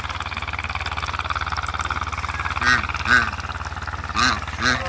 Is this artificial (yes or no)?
no